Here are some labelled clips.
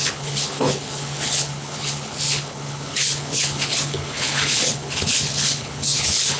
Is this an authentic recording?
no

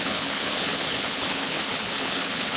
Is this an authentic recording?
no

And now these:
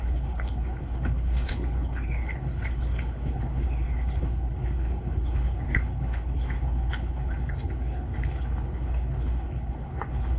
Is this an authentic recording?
no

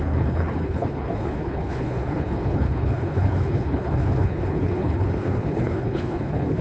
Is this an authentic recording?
no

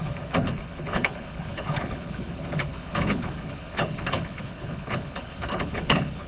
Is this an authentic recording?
no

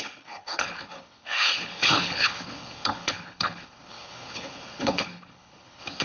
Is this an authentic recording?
no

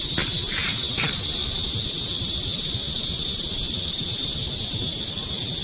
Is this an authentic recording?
yes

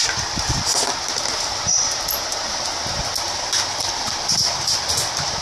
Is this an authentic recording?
yes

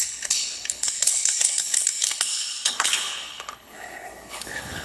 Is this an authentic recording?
no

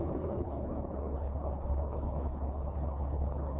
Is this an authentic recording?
no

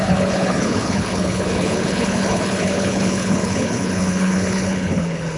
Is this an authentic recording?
no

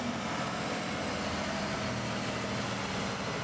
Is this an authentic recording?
yes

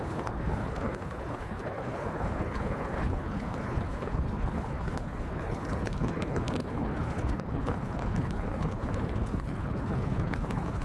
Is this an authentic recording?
no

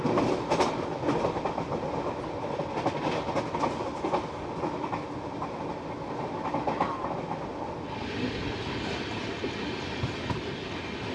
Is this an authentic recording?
yes